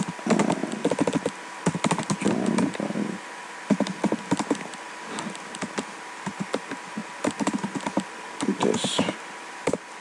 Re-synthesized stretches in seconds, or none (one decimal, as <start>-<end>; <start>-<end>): none